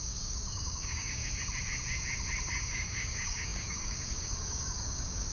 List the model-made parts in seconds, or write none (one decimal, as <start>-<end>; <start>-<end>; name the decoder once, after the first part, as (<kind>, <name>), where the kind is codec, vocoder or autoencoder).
0.0-1.2 (codec, DAC); 2.5-5.3